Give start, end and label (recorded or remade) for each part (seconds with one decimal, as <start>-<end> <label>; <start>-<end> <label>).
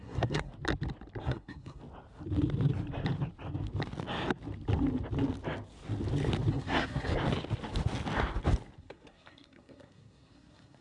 0.0-0.5 remade; 0.5-1.2 recorded; 1.2-1.8 remade; 1.8-6.5 recorded; 6.5-7.1 remade; 7.1-8.8 recorded; 8.8-10.8 remade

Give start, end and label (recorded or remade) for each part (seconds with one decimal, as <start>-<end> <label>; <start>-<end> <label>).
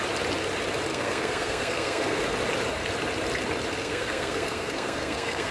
0.0-0.9 recorded; 0.9-2.2 remade; 2.2-3.8 recorded; 3.8-5.5 remade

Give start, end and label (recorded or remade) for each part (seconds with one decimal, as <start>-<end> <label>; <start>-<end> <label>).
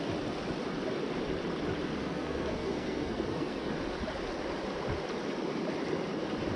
0.0-2.0 recorded; 2.0-3.7 remade; 3.7-6.6 recorded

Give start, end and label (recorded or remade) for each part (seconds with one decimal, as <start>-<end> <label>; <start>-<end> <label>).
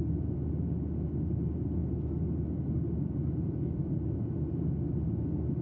0.0-5.6 recorded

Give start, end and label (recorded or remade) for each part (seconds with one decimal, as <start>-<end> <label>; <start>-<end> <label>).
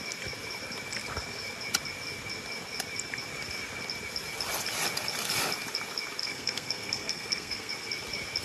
0.0-6.2 recorded; 6.2-7.7 remade; 7.7-8.4 recorded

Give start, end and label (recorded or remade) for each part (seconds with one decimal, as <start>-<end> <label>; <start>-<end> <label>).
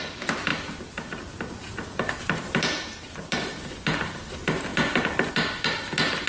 0.0-6.3 recorded